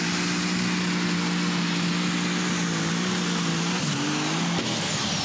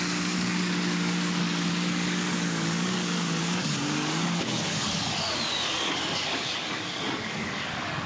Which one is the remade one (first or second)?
second